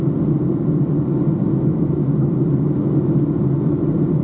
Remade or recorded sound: recorded